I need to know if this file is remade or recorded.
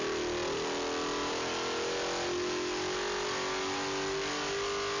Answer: recorded